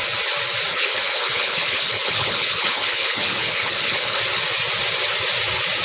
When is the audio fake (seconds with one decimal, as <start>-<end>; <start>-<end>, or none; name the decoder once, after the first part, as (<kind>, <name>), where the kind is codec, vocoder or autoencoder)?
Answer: 0.7-4.2 (codec, HILCodec)